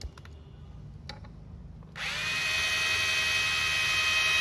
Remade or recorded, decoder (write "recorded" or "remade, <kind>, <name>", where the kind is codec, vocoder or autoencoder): recorded